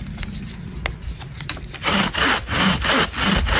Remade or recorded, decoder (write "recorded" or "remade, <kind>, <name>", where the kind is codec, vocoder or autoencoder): recorded